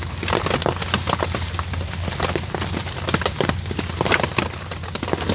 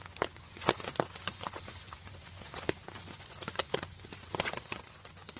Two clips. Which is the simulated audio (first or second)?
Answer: second